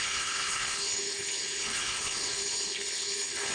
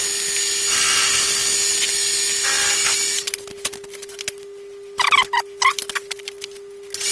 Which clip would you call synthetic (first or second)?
first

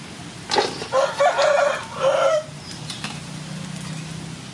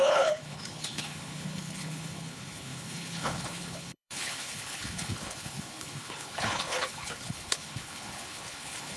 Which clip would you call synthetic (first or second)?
second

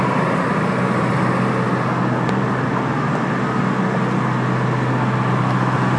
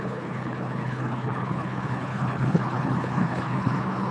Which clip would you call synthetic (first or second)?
second